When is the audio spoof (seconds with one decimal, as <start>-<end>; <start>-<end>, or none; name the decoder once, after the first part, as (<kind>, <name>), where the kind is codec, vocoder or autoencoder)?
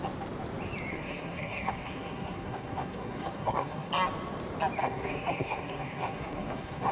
0.9-3.9 (codec, SNAC); 4.8-6.9